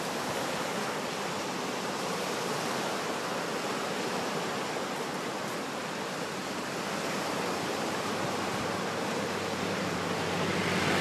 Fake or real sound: fake